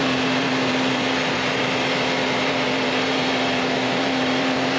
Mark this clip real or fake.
fake